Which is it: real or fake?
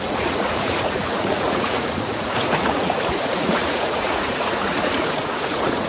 fake